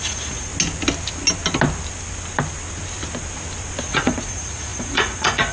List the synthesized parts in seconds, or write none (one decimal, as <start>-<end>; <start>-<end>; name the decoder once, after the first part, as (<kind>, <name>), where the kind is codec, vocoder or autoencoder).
0.0-0.5 (vocoder, Vocos); 3.8-5.5